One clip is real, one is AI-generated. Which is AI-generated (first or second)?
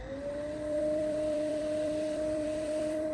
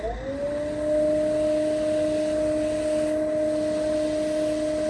first